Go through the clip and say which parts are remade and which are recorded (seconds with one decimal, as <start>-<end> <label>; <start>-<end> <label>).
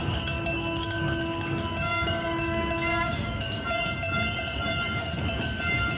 0.0-3.6 remade; 3.6-6.0 recorded